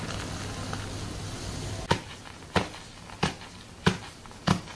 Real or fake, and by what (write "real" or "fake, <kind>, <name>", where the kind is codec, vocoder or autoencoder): real